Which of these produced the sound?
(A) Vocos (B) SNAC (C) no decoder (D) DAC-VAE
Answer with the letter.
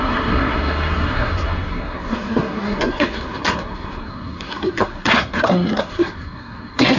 B